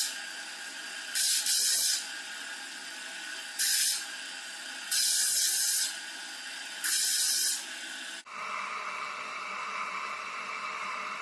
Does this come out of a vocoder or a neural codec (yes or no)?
yes